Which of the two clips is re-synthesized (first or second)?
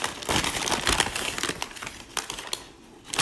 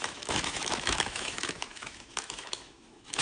second